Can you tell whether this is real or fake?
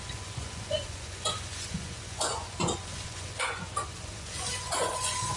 fake